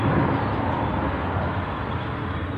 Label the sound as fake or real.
real